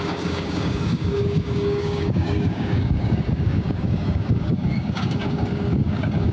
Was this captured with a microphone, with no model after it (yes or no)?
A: no